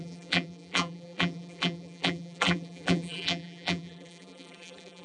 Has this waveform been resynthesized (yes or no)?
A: yes